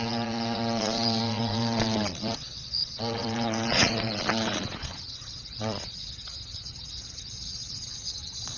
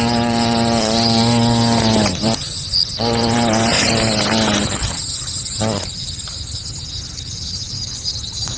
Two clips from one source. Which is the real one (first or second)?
second